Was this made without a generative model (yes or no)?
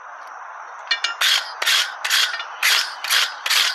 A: yes